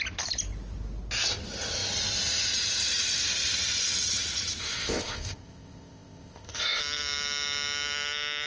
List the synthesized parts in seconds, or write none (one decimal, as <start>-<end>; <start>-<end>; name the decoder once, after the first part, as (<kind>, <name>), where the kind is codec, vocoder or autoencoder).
4.6-6.8 (codec, ZipCodec)

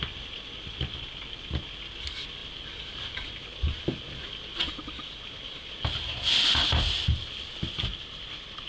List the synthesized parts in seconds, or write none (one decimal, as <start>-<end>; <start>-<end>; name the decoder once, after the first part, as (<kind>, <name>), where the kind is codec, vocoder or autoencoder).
none

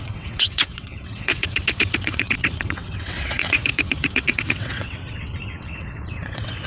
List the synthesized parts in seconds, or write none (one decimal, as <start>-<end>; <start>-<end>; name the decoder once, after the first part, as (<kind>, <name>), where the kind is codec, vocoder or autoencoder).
0.0-6.7 (vocoder, WaveNeXt)

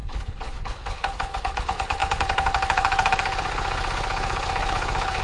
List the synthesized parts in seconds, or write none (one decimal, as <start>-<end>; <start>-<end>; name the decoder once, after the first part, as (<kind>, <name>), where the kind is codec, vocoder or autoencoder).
0.0-5.2 (codec, HILCodec)